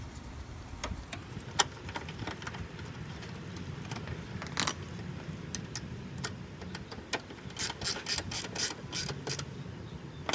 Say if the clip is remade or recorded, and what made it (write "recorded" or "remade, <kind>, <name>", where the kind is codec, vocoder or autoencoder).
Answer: recorded